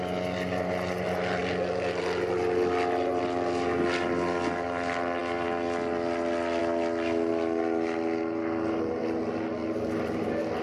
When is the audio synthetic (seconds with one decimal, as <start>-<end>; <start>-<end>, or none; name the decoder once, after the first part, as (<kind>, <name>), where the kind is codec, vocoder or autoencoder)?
none